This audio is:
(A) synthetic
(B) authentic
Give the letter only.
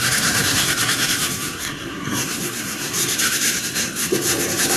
A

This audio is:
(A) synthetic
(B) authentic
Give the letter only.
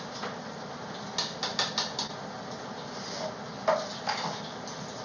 B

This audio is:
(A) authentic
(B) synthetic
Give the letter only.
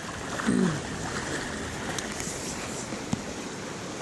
A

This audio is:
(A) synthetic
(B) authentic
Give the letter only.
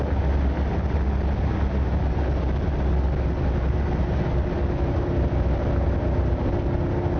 B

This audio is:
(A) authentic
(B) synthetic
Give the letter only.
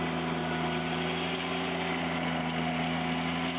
A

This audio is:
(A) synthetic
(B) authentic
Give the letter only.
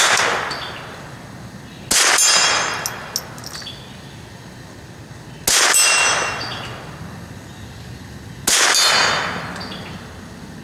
B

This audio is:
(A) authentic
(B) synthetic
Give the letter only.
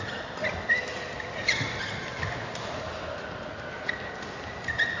A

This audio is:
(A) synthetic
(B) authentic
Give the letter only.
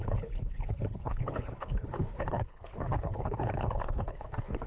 A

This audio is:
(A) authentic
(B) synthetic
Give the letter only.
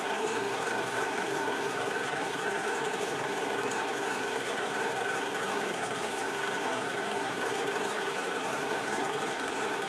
B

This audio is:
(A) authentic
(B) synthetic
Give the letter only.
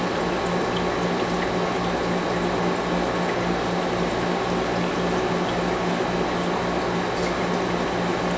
A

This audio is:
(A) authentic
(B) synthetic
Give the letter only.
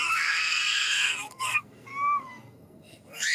B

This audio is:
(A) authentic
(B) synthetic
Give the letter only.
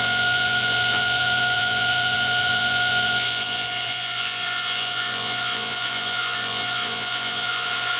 B